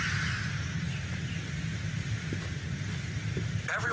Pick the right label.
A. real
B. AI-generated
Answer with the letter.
A